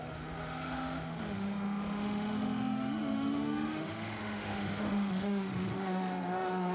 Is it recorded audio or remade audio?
remade